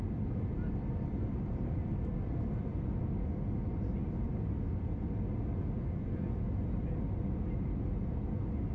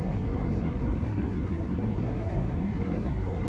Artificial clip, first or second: second